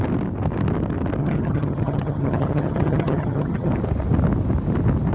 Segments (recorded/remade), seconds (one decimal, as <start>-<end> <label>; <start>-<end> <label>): 0.0-1.2 recorded; 1.2-3.7 remade; 3.7-5.1 recorded